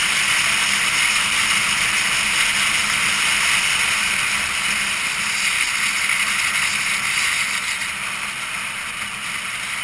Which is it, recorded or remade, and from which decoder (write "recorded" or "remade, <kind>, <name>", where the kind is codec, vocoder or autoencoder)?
recorded